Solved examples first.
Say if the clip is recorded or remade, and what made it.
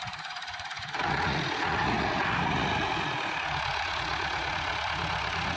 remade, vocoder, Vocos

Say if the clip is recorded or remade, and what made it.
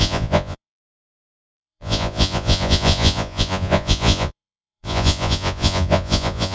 remade, vocoder, Vocos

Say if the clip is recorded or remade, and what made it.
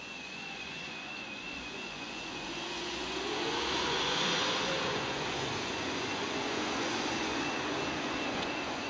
remade, vocoder, Vocos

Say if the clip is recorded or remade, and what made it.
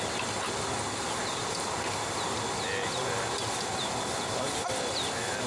recorded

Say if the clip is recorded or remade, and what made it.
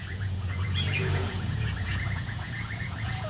remade, vocoder, Vocos